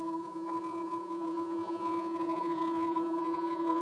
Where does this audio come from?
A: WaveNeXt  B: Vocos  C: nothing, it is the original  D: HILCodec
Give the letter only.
B